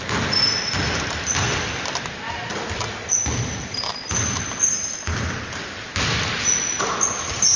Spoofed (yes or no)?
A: no